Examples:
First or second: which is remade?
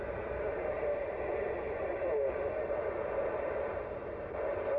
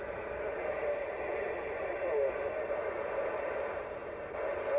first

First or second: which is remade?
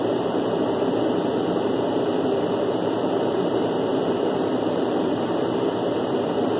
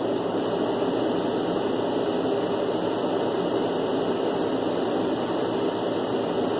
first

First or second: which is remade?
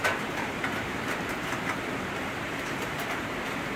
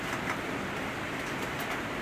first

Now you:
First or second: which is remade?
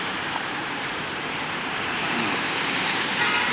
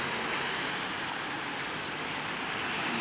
first